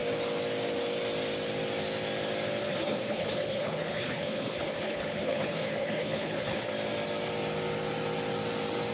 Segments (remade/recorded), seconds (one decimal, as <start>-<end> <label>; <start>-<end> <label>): 0.0-2.6 recorded; 2.6-6.7 remade; 6.7-8.9 recorded